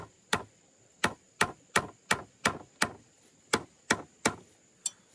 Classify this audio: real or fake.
real